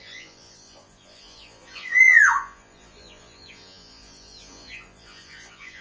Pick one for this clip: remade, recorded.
remade